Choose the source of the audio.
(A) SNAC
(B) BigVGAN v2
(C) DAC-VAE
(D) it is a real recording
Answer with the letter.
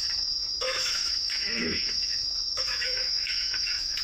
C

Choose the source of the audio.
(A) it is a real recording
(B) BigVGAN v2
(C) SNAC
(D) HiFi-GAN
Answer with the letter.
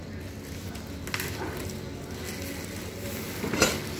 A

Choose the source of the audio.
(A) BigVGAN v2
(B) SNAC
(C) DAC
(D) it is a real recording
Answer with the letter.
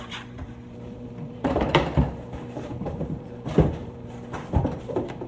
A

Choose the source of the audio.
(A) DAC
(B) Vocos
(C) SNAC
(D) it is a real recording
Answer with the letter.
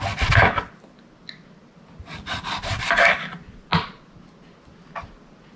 D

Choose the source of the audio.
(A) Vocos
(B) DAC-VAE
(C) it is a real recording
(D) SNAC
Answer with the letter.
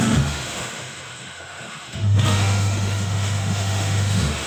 B